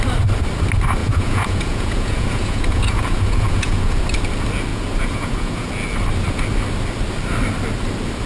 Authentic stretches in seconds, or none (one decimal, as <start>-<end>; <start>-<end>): 0.0-1.0; 4.0-4.7; 5.7-8.3